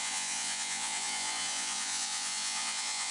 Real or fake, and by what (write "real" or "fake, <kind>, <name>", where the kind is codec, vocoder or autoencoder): fake, vocoder, Vocos